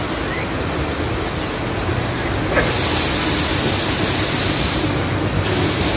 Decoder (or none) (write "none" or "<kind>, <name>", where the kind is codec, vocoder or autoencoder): none